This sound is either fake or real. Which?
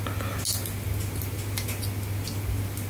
real